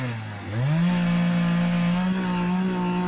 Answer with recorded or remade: recorded